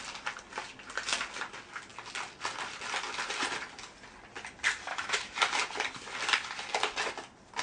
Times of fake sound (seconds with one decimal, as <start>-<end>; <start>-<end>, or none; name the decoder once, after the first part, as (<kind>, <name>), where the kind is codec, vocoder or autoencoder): 4.9-5.4 (autoencoder, DAC-VAE)